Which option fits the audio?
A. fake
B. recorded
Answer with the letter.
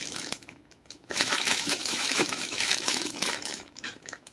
A